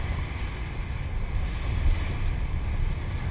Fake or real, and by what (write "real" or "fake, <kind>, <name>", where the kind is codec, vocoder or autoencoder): real